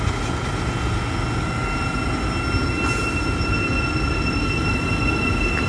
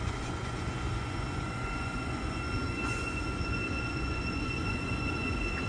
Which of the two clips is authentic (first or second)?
first